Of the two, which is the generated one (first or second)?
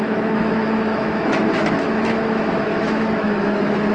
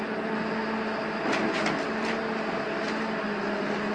first